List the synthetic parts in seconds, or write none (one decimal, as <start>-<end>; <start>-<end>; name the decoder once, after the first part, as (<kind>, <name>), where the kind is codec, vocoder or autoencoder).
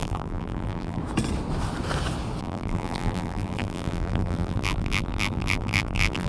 0.0-1.0 (vocoder, BigVGAN v2); 2.4-6.3